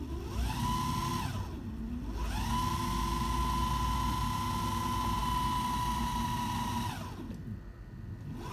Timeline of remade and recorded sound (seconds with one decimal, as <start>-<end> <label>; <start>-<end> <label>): 0.0-8.5 recorded